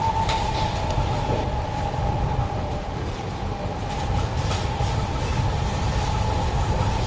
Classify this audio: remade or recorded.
recorded